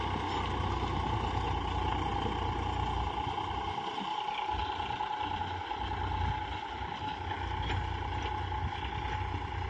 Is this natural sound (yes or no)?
yes